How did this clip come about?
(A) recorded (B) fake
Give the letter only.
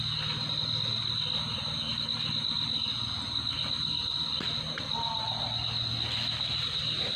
A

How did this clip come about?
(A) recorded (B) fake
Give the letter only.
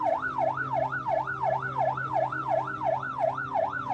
A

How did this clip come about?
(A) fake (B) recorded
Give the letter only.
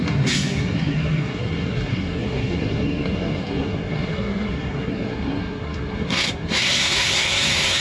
A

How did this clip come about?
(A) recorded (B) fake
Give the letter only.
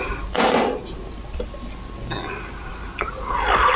A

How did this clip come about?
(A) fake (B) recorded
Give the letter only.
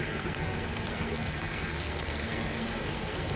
A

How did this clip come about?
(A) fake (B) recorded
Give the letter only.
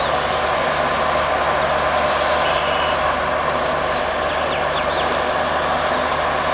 B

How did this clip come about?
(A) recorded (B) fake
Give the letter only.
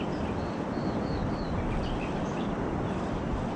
A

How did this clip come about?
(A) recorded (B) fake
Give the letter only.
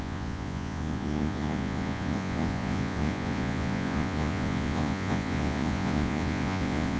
B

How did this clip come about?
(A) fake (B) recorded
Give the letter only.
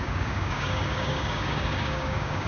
A